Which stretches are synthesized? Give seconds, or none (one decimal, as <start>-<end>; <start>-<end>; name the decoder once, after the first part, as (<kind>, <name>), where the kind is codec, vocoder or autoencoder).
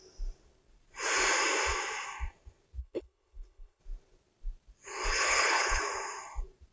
2.8-3.8 (codec, HILCodec); 5.1-5.8